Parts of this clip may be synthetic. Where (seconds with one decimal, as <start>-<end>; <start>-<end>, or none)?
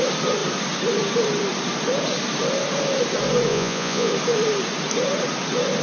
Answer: 3.5-4.1